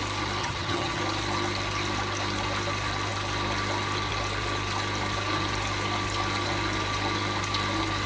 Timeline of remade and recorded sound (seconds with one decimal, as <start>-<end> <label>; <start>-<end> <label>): 0.0-0.4 recorded; 0.4-1.0 remade; 1.0-8.1 recorded